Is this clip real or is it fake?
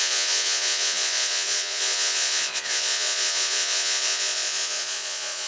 fake